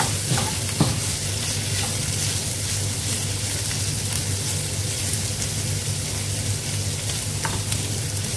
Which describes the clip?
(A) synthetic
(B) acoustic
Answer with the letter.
B